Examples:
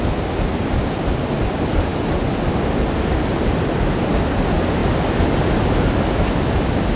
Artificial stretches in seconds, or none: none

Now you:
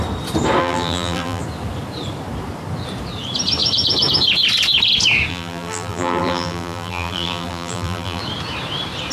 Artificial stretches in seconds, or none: 0.6-1.4 (vocoder, BigVGAN v2); 5.3-8.2

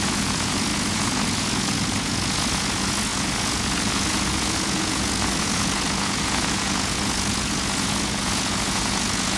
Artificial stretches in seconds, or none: 0.0-9.4 (vocoder, Vocos)

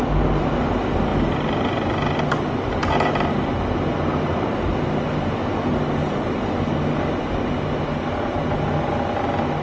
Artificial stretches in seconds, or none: none

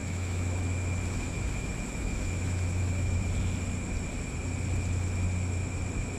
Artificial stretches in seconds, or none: 0.0-3.2 (autoencoder, DAC-VAE)

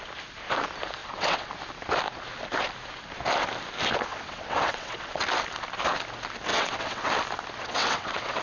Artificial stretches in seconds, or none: 1.0-1.5 (vocoder, WaveNeXt); 4.1-5.2; 6.5-7.1; 7.6-8.4

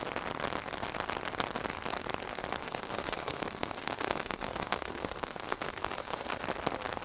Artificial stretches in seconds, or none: 2.6-6.4 (codec, SNAC)